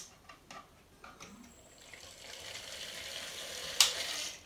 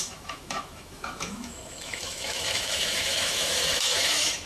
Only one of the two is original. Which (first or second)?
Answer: first